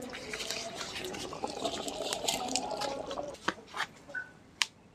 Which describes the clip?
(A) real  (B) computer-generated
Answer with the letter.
B